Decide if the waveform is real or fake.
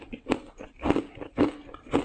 real